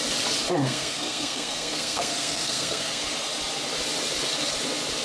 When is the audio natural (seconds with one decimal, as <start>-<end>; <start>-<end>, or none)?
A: 0.0-0.6; 3.0-5.0